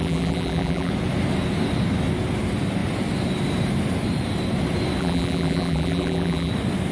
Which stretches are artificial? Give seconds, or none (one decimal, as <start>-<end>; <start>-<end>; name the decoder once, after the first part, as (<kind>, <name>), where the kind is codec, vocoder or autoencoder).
0.0-0.9 (vocoder, BigVGAN v2); 5.0-6.5